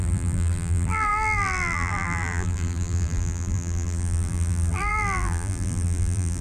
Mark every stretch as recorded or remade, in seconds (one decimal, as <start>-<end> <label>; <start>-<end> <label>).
0.0-6.4 remade